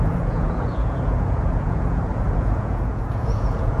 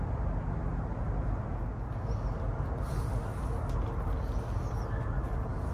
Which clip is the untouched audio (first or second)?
second